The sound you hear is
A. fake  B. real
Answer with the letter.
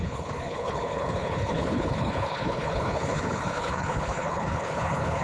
A